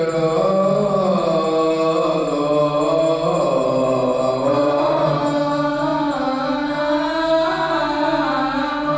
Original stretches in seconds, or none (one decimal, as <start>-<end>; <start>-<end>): 0.0-9.0